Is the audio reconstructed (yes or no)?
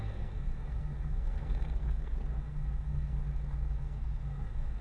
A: yes